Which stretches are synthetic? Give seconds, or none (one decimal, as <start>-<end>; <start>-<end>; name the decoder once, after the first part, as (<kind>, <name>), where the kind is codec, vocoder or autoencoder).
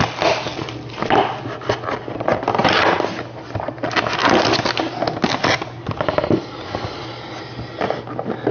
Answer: 2.6-3.2 (vocoder, BigVGAN v2)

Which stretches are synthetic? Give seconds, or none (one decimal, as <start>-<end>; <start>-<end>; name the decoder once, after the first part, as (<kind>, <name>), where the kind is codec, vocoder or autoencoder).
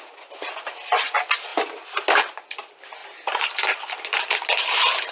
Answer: 1.5-2.5 (vocoder, BigVGAN v2); 3.0-3.5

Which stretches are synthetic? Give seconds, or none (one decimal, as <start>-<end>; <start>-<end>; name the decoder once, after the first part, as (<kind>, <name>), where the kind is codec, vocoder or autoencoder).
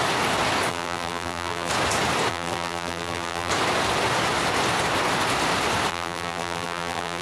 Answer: 0.7-1.7 (vocoder, BigVGAN v2); 2.3-3.5; 5.9-7.2